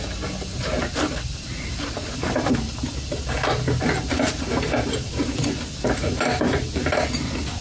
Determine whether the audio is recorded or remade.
recorded